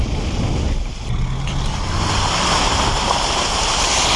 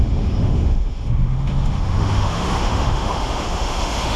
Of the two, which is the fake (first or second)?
second